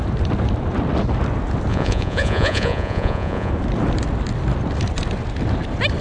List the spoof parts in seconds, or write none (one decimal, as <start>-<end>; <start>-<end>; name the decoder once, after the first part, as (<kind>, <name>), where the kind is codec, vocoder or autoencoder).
1.7-3.5 (vocoder, Vocos)